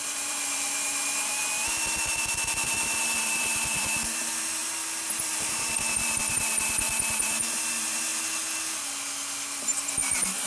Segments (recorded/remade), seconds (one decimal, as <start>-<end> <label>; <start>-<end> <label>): 0.0-1.4 remade; 1.4-2.3 recorded; 2.3-4.6 remade; 4.6-5.2 recorded; 5.2-8.1 remade; 8.1-9.6 recorded; 9.6-10.5 remade